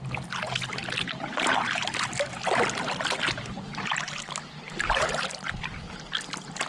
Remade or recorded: recorded